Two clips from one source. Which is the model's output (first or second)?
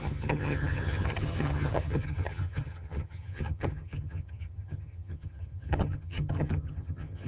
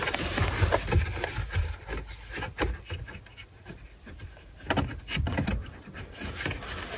first